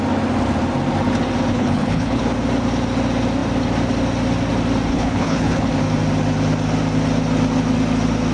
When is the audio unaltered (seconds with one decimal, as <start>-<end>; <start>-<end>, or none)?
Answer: 0.0-1.5; 2.2-4.9; 5.7-8.3

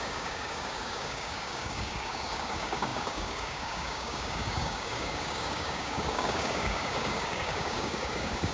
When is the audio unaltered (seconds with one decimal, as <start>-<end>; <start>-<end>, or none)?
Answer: none